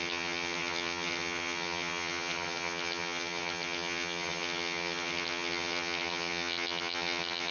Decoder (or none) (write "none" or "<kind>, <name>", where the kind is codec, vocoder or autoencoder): vocoder, HiFi-GAN